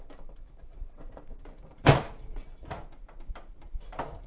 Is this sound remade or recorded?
remade